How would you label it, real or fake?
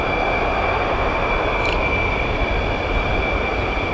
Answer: real